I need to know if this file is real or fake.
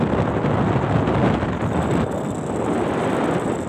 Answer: real